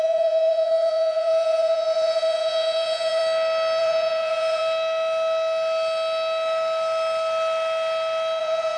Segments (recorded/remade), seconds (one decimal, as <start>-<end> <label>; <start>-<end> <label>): 0.0-3.2 remade; 3.2-3.8 recorded; 3.8-4.6 remade; 4.6-8.4 recorded; 8.4-8.8 remade